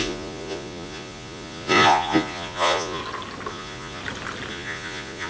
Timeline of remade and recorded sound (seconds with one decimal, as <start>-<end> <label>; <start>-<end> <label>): 0.0-3.0 remade; 3.0-3.5 recorded; 3.5-4.0 remade; 4.0-4.5 recorded; 4.5-5.3 remade